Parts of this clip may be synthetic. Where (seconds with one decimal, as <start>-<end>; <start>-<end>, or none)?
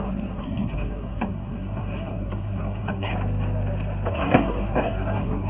0.0-3.1; 4.1-5.5